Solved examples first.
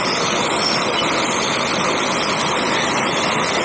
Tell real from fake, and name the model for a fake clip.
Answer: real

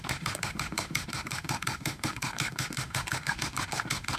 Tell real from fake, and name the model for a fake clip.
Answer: fake, autoencoder, DAC-VAE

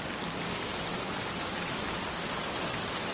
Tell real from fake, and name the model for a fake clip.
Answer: real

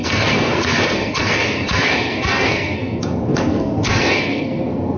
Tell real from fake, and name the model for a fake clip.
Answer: fake, codec, SNAC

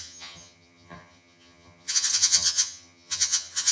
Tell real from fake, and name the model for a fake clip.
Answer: fake, vocoder, HiFi-GAN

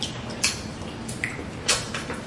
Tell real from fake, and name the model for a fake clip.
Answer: fake, vocoder, BigVGAN v2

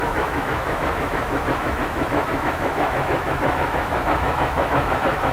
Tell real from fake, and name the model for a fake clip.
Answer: fake, autoencoder, DAC-VAE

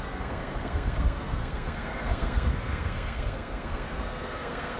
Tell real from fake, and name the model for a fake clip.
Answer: fake, codec, SNAC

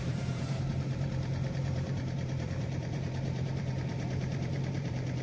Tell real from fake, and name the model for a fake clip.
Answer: fake, vocoder, BigVGAN v2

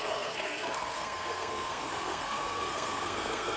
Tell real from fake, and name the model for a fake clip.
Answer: fake, codec, SNAC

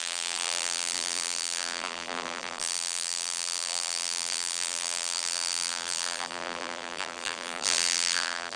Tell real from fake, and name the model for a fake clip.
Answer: fake, vocoder, BigVGAN v2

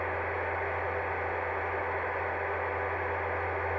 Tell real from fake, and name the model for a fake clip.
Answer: real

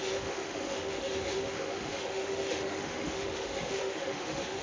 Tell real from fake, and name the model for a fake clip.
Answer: fake, autoencoder, DAC-VAE